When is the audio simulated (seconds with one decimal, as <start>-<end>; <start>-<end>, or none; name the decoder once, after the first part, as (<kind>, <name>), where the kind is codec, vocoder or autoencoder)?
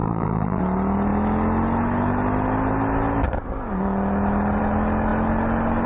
0.0-0.6 (vocoder, BigVGAN v2)